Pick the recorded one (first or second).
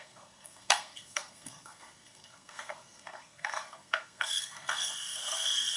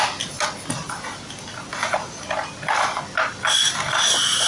second